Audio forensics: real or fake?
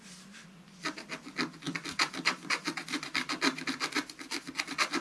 real